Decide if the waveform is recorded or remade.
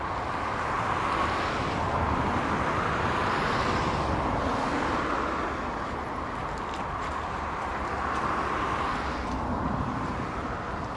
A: recorded